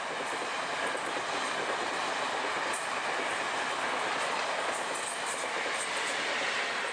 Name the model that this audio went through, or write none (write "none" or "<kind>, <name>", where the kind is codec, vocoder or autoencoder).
none